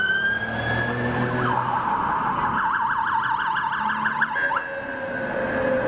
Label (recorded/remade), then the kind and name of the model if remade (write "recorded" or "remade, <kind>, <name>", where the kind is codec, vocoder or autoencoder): recorded